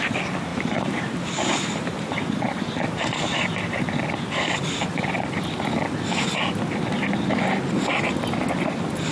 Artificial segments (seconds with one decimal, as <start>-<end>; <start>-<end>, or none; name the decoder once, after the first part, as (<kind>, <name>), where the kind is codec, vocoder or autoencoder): 0.5-3.8 (vocoder, BigVGAN v2)